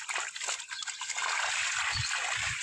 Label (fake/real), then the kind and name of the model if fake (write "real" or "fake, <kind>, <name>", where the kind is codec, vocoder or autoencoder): real